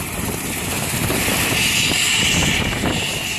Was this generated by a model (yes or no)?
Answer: no